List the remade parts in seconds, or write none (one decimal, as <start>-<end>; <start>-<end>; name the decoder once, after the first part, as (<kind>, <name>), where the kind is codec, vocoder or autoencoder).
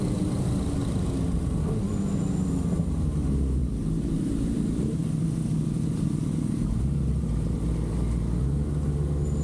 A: 3.6-7.6 (vocoder, BigVGAN v2)